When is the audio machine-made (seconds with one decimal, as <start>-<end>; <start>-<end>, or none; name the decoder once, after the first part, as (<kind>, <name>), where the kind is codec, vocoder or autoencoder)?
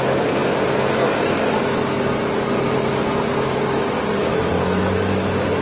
none